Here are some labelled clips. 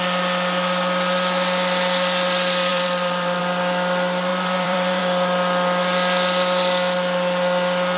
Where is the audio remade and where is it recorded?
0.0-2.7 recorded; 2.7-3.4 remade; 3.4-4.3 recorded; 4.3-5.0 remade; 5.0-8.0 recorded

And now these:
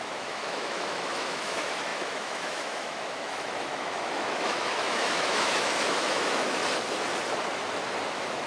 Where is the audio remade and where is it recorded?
0.0-6.6 remade; 6.6-8.1 recorded; 8.1-8.5 remade